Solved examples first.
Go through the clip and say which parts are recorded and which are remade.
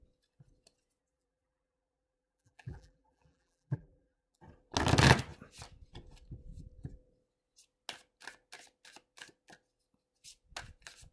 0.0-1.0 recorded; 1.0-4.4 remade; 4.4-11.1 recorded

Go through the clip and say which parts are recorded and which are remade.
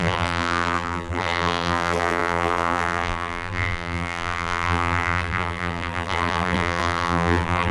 0.0-7.7 remade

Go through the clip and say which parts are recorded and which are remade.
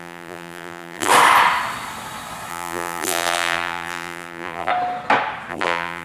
0.0-1.1 remade; 1.1-2.5 recorded; 2.5-4.7 remade; 4.7-5.5 recorded; 5.5-6.0 remade